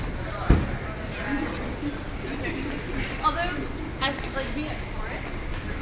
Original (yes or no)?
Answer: yes